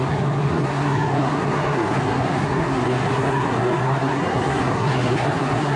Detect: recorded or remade remade